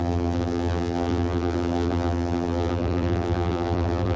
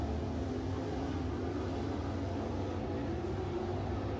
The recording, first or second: second